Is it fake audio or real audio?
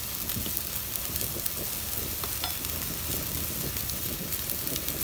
real